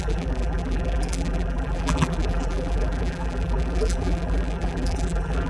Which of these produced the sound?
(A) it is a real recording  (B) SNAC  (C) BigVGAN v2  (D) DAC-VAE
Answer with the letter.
C